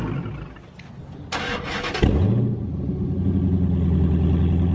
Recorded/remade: recorded